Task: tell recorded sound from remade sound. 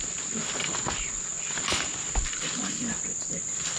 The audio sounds remade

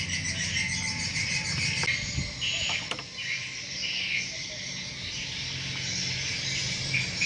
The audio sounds recorded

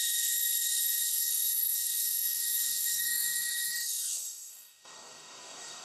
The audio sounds remade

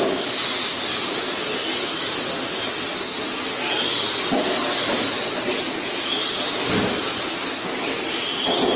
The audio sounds recorded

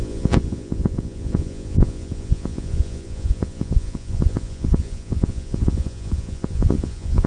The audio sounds remade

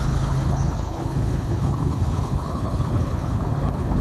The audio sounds remade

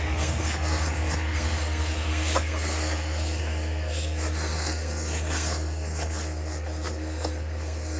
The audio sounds remade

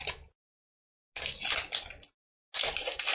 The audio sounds recorded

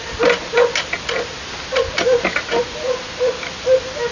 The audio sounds recorded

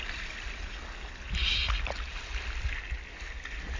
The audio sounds recorded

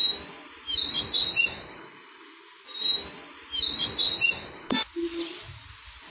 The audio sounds recorded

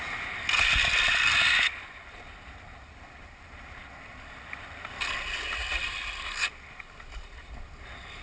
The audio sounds recorded